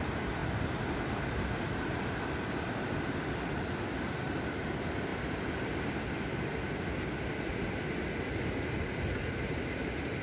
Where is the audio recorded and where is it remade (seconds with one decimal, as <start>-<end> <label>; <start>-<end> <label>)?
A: 0.0-10.2 recorded